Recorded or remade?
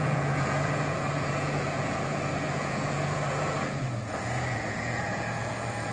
remade